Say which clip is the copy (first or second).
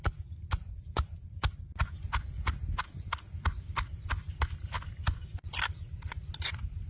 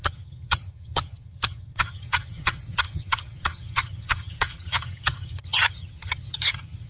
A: second